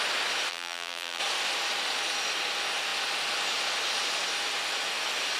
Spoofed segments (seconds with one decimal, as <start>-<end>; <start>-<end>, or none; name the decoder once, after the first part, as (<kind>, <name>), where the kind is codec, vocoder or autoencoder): 0.5-1.2 (vocoder, BigVGAN v2)